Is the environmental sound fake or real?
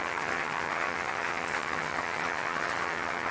fake